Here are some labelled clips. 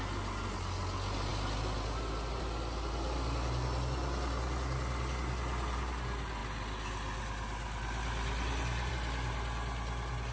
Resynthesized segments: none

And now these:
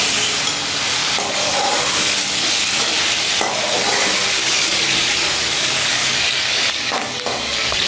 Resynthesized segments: 1.0-3.0 (codec, DAC); 4.4-7.9

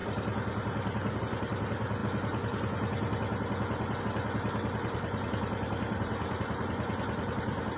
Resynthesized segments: none

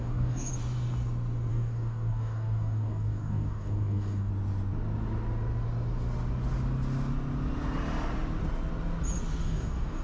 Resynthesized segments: 0.0-0.5 (codec, DAC); 1.5-4.3; 9.4-10.0

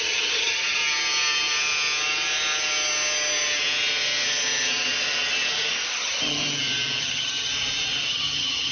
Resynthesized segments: 0.0-0.8 (vocoder, HiFi-GAN); 5.9-6.4; 7.0-7.5; 8.1-8.7

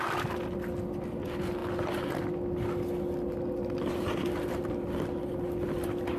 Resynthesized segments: none